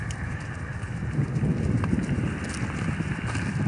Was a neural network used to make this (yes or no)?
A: no